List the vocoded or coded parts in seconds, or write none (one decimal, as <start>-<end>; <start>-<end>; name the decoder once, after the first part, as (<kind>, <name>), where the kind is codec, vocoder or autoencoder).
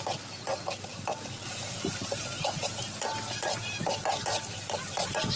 none